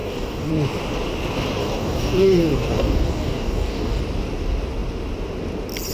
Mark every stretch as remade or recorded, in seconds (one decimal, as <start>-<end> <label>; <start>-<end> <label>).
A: 0.0-0.5 remade; 0.5-1.6 recorded; 1.6-4.0 remade; 4.0-5.9 recorded